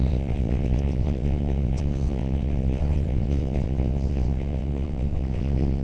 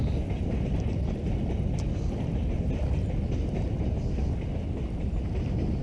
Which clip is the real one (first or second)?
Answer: second